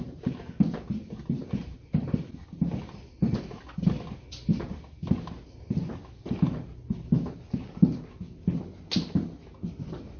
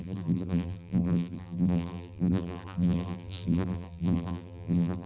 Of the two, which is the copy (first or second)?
second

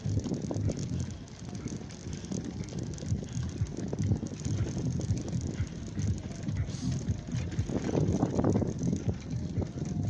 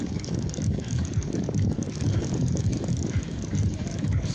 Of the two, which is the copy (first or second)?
second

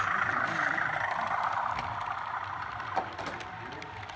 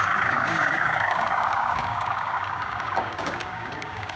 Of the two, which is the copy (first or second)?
second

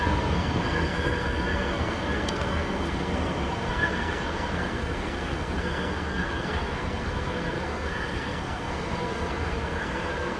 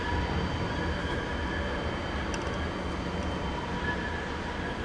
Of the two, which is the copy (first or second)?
first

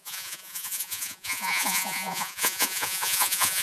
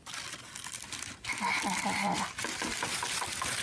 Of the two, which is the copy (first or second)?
first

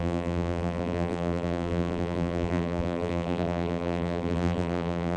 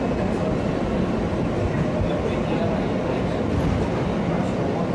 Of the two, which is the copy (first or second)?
first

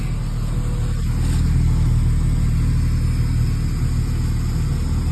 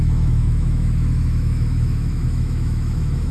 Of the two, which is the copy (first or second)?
second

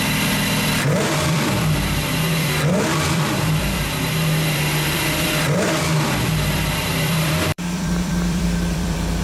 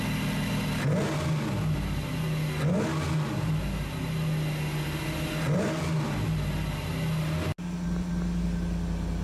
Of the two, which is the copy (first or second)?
first